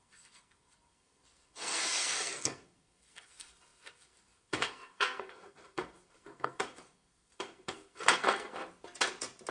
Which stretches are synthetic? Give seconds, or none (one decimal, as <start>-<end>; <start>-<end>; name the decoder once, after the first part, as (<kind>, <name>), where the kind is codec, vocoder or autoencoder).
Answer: 0.0-8.6 (codec, SNAC)